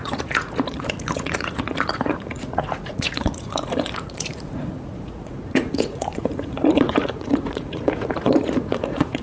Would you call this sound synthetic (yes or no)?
yes